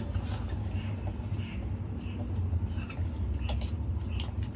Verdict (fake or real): real